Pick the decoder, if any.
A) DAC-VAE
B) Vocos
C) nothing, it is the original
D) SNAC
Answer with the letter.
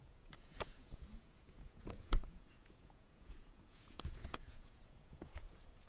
B